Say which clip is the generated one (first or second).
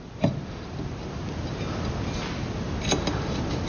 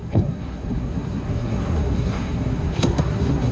second